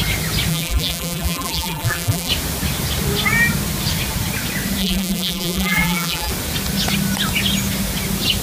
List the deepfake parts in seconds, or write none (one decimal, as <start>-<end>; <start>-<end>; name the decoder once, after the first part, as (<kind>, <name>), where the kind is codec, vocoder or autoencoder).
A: 0.5-2.3 (vocoder, BigVGAN v2); 4.8-6.3